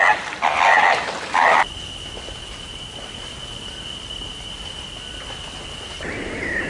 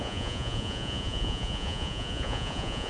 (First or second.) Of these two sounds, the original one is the first